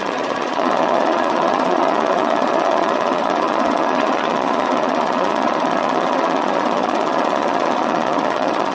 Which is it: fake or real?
fake